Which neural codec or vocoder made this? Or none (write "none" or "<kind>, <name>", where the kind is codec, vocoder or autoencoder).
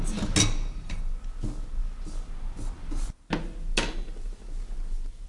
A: none